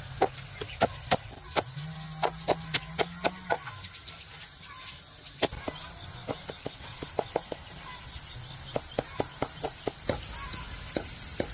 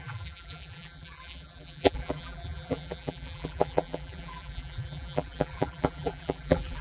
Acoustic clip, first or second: first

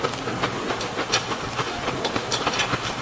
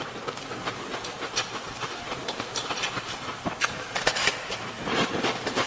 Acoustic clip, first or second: first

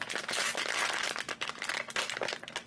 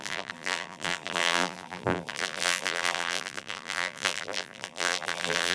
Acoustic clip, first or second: first